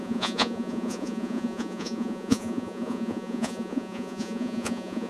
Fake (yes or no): yes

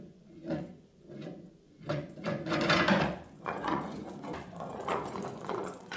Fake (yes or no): yes